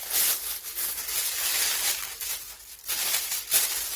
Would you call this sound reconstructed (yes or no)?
no